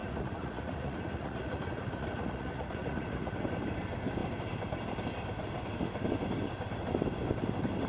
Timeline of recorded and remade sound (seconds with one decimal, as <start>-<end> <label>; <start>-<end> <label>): 0.0-3.3 remade; 3.3-7.9 recorded